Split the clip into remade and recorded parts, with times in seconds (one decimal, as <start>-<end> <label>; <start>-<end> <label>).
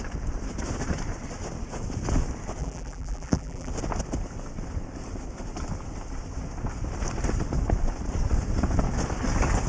0.0-2.6 recorded; 2.6-3.7 remade; 3.7-9.7 recorded